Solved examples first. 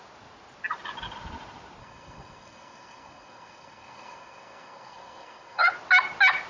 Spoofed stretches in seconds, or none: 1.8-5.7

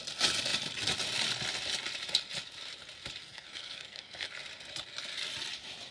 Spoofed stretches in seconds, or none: 3.2-4.3